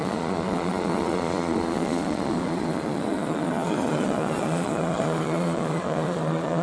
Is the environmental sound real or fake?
fake